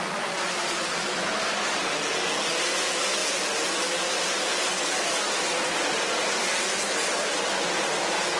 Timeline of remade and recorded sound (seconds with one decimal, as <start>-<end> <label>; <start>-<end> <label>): 0.0-8.4 recorded